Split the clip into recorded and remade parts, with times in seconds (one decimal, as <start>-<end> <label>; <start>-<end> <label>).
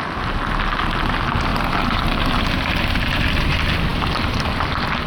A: 0.0-1.5 recorded; 1.5-2.4 remade; 2.4-5.1 recorded